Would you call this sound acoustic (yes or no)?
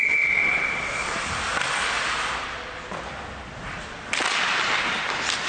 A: yes